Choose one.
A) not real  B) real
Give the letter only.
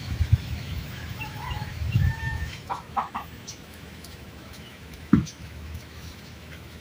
A